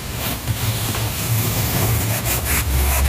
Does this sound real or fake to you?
fake